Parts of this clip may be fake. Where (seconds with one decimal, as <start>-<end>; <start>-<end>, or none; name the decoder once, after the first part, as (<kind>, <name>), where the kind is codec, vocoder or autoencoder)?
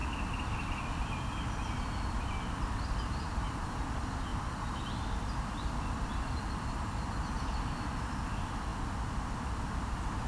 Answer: 4.3-6.1 (vocoder, BigVGAN v2)